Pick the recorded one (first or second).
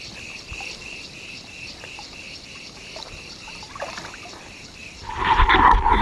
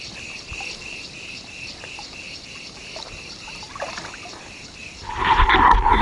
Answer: second